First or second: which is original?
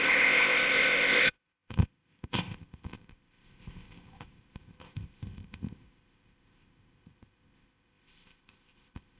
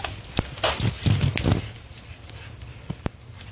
second